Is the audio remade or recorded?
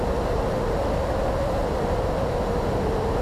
recorded